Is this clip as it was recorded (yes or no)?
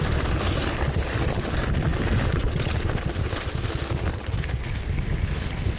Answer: yes